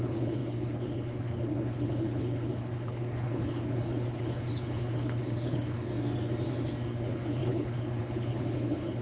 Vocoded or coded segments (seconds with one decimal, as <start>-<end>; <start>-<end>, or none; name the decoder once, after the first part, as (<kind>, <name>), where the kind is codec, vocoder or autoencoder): 0.0-5.9 (codec, HILCodec); 6.9-9.0